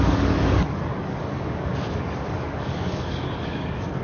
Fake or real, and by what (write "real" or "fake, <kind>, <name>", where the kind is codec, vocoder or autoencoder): fake, codec, DAC